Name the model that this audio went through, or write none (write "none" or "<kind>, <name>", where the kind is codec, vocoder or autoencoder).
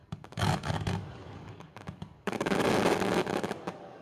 codec, DAC